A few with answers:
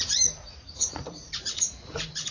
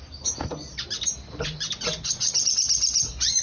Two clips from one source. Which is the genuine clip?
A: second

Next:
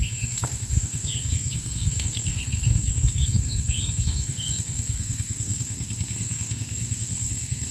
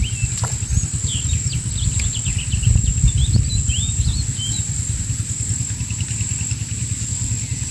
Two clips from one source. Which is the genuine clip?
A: second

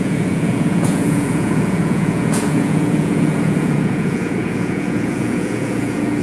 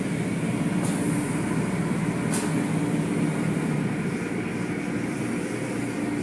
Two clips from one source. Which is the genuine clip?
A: second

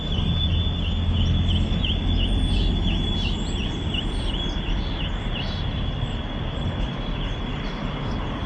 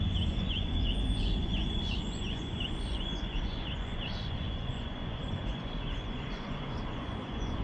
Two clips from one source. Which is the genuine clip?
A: first